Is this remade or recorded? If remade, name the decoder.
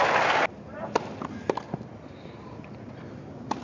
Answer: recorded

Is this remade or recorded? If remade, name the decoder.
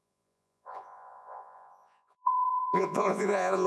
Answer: remade, vocoder, Vocos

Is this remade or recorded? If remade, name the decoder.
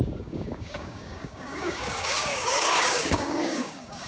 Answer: remade, codec, DAC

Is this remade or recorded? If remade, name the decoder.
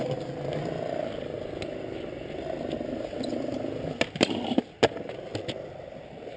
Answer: recorded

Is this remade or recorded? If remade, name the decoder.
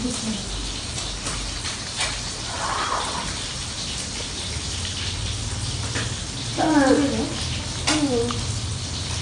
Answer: recorded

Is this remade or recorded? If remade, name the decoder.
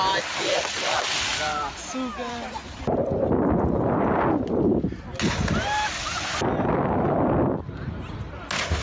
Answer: recorded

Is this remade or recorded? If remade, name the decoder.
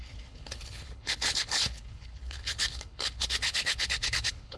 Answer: remade, codec, HILCodec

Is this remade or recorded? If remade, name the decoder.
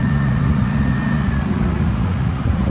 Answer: remade, vocoder, Vocos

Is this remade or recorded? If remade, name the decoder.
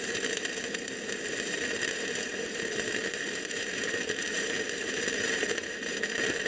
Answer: remade, vocoder, BigVGAN v2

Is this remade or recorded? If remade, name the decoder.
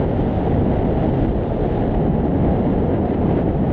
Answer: recorded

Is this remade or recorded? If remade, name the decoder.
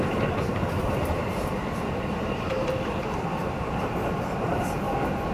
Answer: remade, vocoder, BigVGAN v2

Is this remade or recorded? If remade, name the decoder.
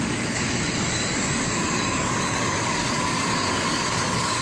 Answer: remade, codec, DAC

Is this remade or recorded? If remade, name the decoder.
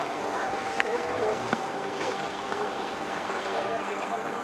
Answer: remade, codec, SNAC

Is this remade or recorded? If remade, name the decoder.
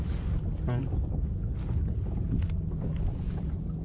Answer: recorded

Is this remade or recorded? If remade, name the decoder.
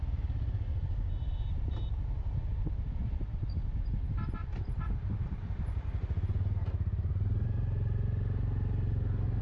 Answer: recorded